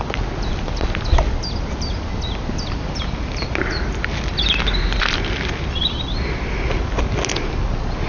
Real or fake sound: real